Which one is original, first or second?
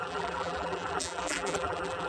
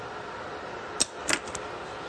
second